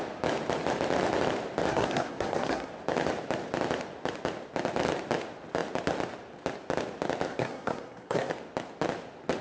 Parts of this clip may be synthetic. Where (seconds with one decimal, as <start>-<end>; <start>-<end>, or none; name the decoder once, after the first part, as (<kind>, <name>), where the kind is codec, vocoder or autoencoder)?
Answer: 1.7-2.7 (codec, SNAC); 7.3-8.3